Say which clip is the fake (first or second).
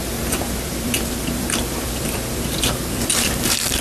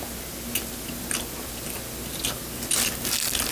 first